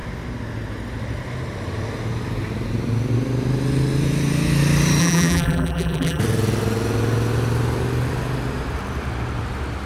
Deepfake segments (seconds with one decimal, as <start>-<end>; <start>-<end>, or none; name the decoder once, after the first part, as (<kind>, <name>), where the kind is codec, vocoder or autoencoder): 5.0-6.2 (vocoder, BigVGAN v2)